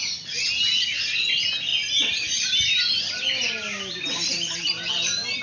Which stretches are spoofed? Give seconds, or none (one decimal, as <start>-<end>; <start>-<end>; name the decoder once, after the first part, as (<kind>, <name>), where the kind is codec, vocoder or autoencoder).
none